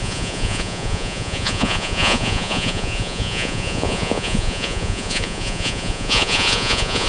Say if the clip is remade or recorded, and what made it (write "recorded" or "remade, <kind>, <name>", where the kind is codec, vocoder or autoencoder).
remade, vocoder, Vocos